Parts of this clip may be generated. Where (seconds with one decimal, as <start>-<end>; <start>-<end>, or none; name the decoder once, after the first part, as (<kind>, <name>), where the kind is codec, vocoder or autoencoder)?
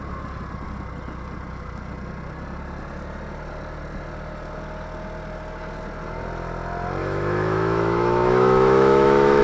7.0-9.4 (autoencoder, DAC-VAE)